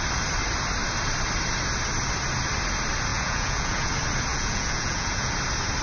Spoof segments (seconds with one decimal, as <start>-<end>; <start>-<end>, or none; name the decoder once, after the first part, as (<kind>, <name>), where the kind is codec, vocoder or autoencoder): 3.1-3.9 (vocoder, Vocos); 4.3-5.3